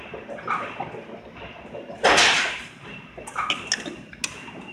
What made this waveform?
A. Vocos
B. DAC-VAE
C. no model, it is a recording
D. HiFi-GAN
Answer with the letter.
C